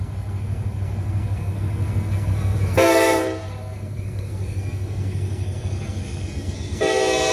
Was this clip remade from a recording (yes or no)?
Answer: yes